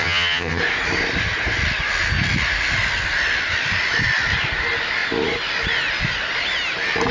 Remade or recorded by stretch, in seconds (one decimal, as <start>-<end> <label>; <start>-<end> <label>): 0.0-0.6 remade; 0.6-7.1 recorded